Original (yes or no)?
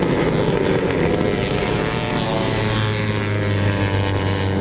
yes